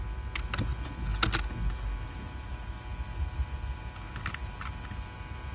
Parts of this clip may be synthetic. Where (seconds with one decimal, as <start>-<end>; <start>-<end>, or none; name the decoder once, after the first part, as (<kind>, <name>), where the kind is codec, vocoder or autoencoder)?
none